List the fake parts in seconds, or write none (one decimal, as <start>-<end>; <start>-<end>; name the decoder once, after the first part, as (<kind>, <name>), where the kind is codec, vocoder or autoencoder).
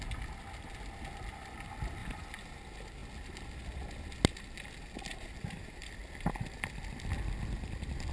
2.0-2.6 (vocoder, BigVGAN v2); 5.1-5.8